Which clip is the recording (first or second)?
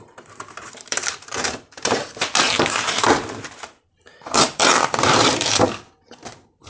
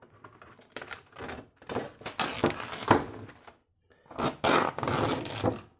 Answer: second